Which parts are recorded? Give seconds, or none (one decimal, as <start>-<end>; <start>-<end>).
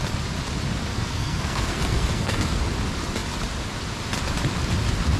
0.0-0.9; 2.6-5.2